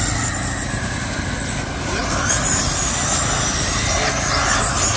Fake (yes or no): no